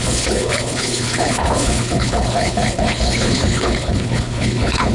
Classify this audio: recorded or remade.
remade